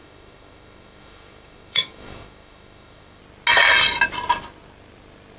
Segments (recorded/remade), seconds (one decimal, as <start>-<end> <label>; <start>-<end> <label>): 0.0-3.2 remade; 3.2-5.4 recorded